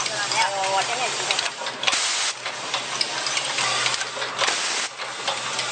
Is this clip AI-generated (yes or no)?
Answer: no